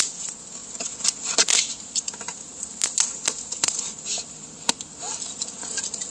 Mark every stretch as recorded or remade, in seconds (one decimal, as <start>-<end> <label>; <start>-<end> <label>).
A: 0.0-6.1 recorded